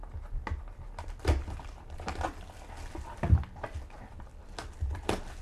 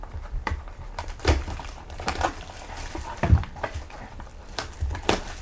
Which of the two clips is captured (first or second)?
first